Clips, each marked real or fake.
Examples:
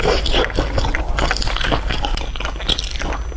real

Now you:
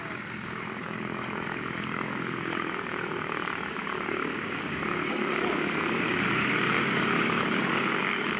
fake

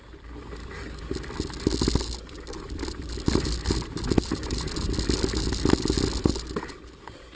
real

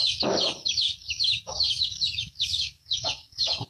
fake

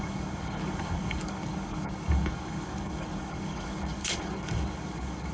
fake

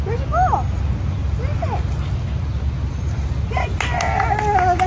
real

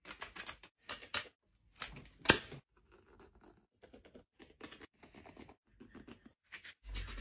real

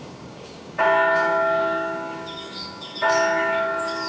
fake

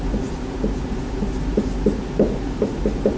real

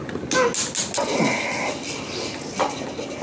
real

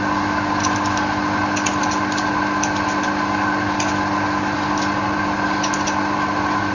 real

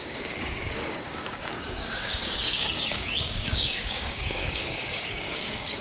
fake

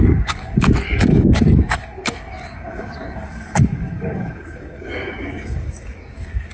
fake